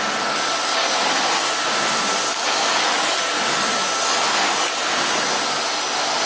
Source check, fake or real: real